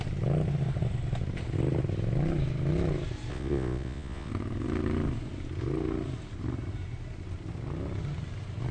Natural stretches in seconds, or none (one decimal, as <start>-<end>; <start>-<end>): 0.0-3.3; 4.3-8.7